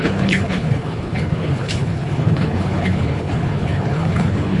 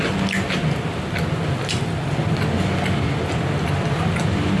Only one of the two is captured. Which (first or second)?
second